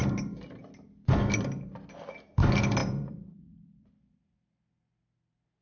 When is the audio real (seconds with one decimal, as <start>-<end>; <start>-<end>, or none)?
0.0-2.8; 4.2-5.6